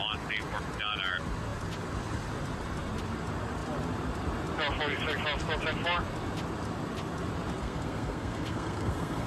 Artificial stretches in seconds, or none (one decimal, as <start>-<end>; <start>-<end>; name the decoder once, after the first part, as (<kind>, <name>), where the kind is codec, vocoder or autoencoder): 7.6-9.3 (codec, SNAC)